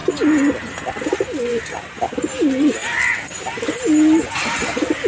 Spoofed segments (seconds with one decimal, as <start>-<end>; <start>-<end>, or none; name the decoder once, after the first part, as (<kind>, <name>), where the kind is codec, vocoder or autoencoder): 0.8-1.5 (vocoder, BigVGAN v2); 2.3-2.8; 4.2-5.1